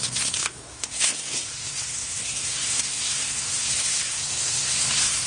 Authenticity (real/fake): fake